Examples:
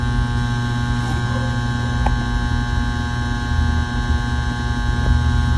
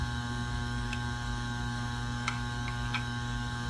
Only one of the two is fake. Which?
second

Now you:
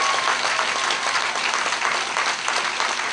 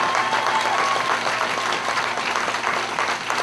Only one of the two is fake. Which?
second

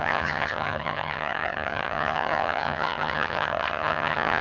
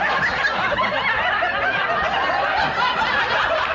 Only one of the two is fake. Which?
first